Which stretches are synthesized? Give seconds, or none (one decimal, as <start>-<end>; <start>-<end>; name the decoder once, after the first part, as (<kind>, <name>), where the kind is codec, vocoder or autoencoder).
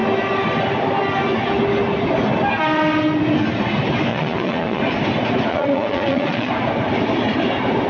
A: 4.1-4.8 (vocoder, Vocos); 5.5-6.5